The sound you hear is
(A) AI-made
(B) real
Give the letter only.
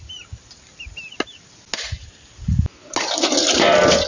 B